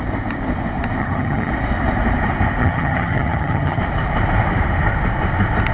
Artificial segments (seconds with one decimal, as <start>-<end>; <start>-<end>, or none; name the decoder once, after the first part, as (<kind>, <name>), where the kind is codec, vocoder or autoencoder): 1.0-1.5 (vocoder, HiFi-GAN); 2.6-3.8